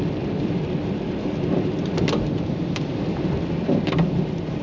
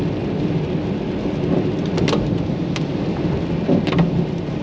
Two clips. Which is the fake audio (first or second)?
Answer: first